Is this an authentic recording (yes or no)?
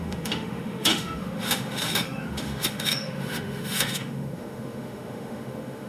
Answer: no